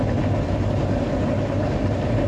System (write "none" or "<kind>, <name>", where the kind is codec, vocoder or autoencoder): none